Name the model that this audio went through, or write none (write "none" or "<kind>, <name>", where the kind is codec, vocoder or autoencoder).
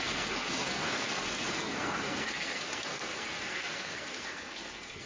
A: codec, SNAC